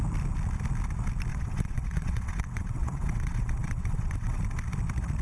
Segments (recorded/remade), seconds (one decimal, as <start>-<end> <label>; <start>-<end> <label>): 0.0-1.3 recorded; 1.3-4.4 remade; 4.4-5.2 recorded